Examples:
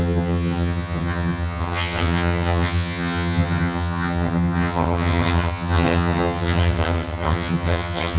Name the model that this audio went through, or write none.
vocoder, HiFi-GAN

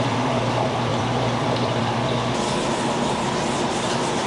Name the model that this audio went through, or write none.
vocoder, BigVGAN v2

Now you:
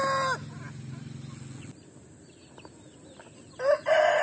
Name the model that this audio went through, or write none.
none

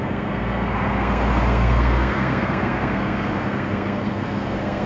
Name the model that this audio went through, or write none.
codec, SNAC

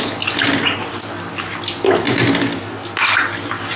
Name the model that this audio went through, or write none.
none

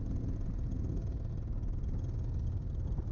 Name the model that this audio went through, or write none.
none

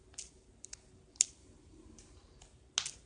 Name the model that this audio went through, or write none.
none